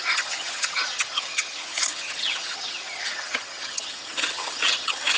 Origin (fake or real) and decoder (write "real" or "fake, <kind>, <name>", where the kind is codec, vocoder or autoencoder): fake, vocoder, HiFi-GAN